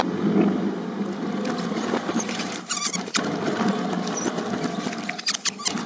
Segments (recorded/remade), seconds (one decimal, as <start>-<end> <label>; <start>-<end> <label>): 0.0-2.1 recorded; 2.1-3.2 remade; 3.2-5.9 recorded